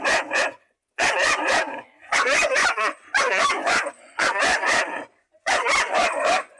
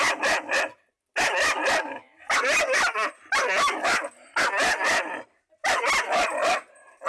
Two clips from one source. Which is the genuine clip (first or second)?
second